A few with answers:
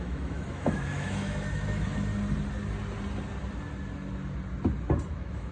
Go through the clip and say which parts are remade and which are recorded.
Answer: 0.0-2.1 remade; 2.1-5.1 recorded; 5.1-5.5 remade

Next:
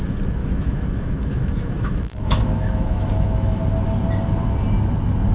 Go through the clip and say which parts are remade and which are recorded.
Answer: 0.0-0.4 recorded; 0.4-3.6 remade; 3.6-5.3 recorded

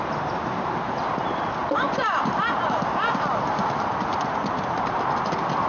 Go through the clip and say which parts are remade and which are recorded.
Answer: 0.0-5.7 recorded

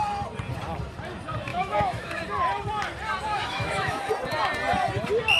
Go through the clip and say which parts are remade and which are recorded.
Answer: 0.0-1.5 recorded; 1.5-2.2 remade; 2.2-3.3 recorded; 3.3-4.1 remade; 4.1-5.4 recorded

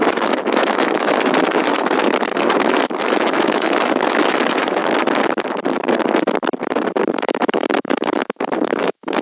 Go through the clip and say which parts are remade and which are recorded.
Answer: 0.0-4.8 remade; 4.8-7.1 recorded; 7.1-9.2 remade